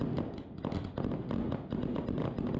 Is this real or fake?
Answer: real